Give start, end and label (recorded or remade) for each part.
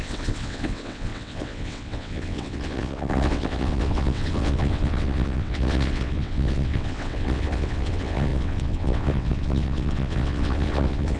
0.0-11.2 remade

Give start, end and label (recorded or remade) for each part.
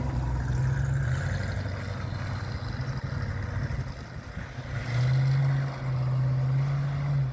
0.0-7.3 recorded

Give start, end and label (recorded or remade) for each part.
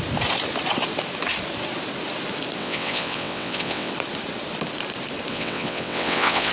0.0-2.6 recorded; 2.6-3.9 remade; 3.9-5.3 recorded; 5.3-6.5 remade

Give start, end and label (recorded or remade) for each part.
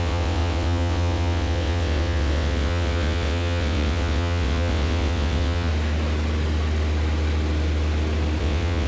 0.0-5.7 remade; 5.7-8.4 recorded; 8.4-8.9 remade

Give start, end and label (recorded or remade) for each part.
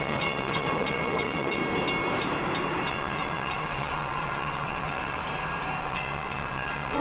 0.0-1.6 remade; 1.6-2.9 recorded; 2.9-5.2 remade; 5.2-5.8 recorded; 5.8-7.0 remade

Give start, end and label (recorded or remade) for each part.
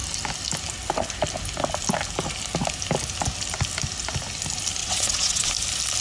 0.0-4.8 recorded; 4.8-5.5 remade; 5.5-6.0 recorded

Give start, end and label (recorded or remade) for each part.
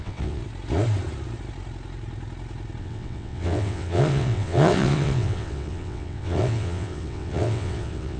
0.0-0.4 remade; 0.4-2.8 recorded; 2.8-8.2 remade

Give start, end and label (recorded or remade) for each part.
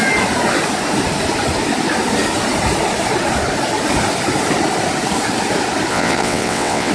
0.0-5.9 recorded; 5.9-6.9 remade